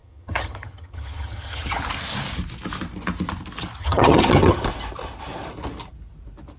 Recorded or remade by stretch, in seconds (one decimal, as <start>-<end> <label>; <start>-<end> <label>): 0.0-1.8 remade; 1.8-3.8 recorded; 3.8-4.6 remade; 4.6-6.6 recorded